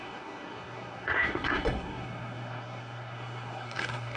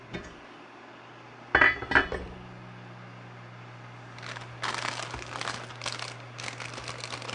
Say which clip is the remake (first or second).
first